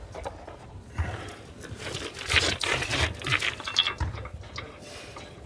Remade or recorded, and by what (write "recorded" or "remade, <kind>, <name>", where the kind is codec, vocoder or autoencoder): recorded